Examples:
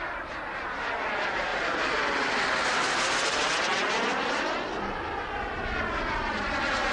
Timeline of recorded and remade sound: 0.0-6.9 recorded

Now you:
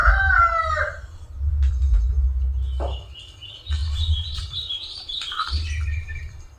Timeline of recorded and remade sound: 0.0-1.7 remade; 1.7-3.8 recorded; 3.8-6.6 remade

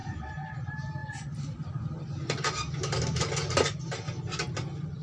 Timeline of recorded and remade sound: 0.0-1.0 recorded; 1.0-4.0 remade; 4.0-5.0 recorded

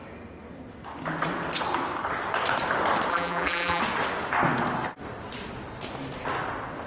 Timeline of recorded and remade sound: 0.0-3.1 recorded; 3.1-3.8 remade; 3.8-6.9 recorded

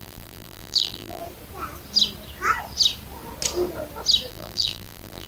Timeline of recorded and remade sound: 0.0-1.2 remade; 1.2-4.3 recorded; 4.3-5.3 remade